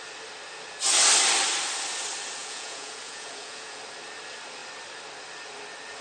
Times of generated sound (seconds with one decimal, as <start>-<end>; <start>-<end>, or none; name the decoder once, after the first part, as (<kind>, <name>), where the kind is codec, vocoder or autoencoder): 2.4-3.8 (vocoder, Vocos)